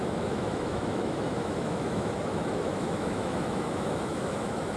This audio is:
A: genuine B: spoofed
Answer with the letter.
B